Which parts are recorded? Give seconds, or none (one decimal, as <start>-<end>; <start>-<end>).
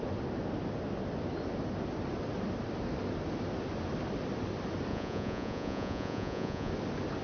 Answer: 0.0-4.9; 6.7-7.2